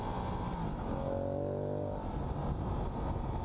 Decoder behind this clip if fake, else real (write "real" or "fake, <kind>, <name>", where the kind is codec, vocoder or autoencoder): real